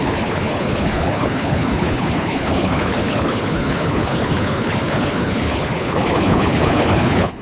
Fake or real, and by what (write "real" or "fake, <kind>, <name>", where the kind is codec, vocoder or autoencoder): fake, codec, HILCodec